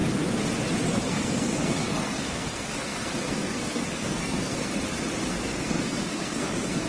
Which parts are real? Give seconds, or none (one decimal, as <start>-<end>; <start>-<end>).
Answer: 0.0-0.9; 4.7-5.2